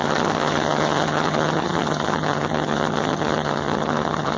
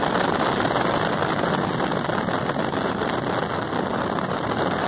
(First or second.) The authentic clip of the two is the second